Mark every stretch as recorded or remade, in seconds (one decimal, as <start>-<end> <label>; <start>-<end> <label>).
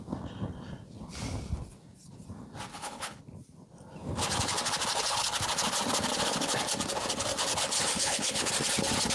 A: 0.0-2.7 recorded; 2.7-3.2 remade; 3.2-7.9 recorded; 7.9-8.5 remade; 8.5-9.1 recorded